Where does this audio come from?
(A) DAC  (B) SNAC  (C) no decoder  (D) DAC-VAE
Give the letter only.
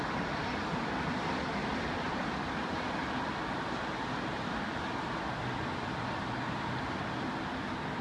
C